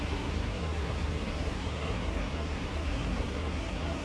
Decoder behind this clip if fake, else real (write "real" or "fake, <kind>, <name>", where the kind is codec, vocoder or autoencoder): fake, codec, SNAC